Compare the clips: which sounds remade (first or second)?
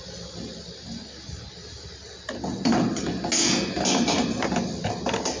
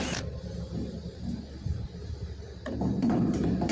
second